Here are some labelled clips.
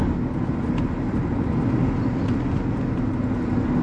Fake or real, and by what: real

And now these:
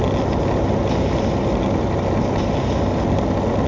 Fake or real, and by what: real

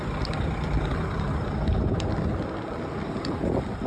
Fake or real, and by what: real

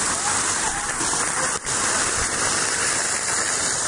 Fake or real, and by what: fake, vocoder, BigVGAN v2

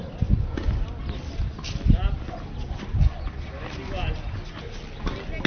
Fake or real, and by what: real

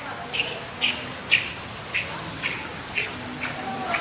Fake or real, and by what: real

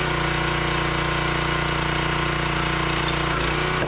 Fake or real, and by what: real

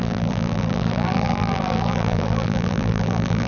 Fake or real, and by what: fake, vocoder, BigVGAN v2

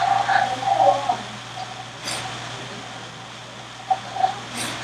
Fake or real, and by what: real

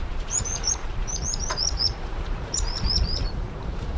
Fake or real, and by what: fake, vocoder, Vocos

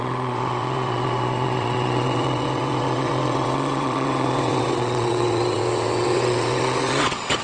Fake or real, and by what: fake, vocoder, WaveNeXt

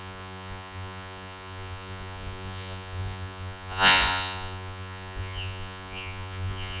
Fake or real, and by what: fake, vocoder, Vocos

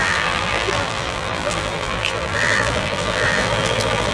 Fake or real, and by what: fake, vocoder, BigVGAN v2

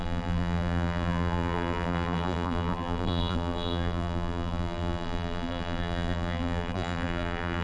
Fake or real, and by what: fake, vocoder, BigVGAN v2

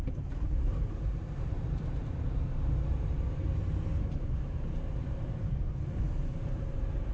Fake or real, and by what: fake, vocoder, BigVGAN v2